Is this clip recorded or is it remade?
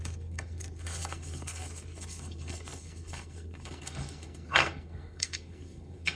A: remade